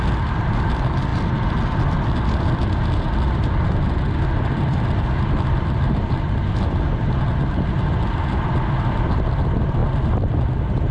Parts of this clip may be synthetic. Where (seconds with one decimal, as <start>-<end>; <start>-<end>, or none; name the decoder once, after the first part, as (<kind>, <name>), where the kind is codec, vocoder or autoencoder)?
9.8-10.4 (vocoder, BigVGAN v2)